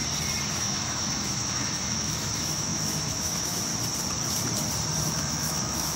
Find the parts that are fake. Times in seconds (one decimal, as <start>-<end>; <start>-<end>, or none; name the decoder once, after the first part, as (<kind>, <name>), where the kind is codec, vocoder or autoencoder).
0.5-3.7 (autoencoder, DAC-VAE); 5.1-6.0